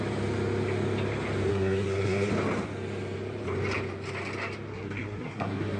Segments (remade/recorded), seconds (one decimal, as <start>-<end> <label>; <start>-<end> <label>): 0.0-1.5 recorded; 1.5-2.3 remade; 2.3-4.7 recorded; 4.7-5.8 remade